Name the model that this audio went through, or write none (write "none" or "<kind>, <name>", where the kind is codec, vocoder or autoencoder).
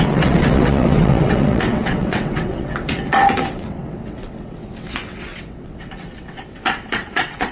vocoder, WaveNeXt